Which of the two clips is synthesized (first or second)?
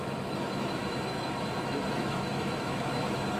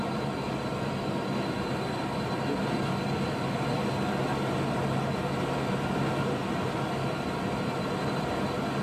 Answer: first